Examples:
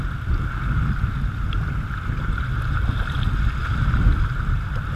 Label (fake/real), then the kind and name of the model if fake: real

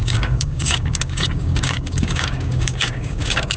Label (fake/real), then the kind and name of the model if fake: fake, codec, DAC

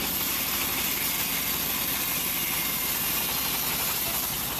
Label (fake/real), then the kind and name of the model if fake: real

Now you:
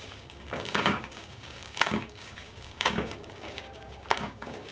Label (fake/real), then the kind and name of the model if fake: fake, codec, DAC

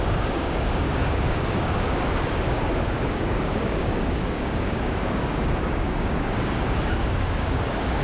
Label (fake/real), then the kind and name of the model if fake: fake, codec, DAC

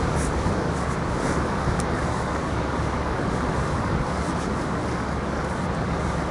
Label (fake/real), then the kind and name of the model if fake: fake, codec, DAC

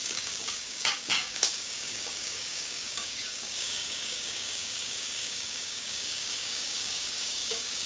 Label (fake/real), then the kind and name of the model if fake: fake, codec, DAC